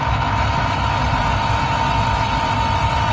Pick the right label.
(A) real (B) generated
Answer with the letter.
A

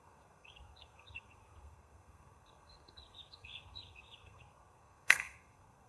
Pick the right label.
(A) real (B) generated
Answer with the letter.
B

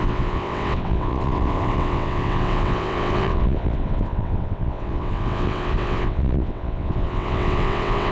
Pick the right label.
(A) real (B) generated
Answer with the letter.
B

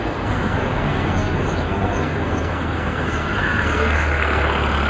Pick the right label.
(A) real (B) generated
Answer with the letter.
B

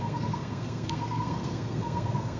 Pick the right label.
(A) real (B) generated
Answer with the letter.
B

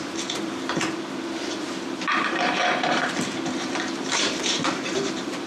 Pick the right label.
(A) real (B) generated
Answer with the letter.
B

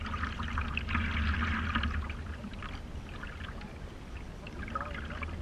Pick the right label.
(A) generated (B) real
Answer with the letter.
B